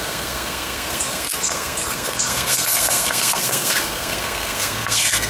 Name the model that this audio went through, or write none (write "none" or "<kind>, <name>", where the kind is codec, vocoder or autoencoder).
codec, SNAC